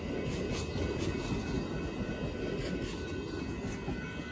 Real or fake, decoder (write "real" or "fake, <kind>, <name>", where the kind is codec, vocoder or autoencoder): real